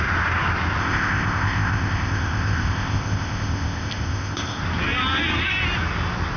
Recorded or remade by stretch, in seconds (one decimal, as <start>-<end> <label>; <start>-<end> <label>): 0.0-0.8 recorded; 0.8-4.6 remade; 4.6-6.4 recorded